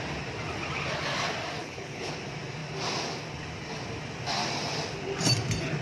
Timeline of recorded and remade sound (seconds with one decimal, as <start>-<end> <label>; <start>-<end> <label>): 0.0-1.6 recorded; 1.6-2.1 remade; 2.1-5.8 recorded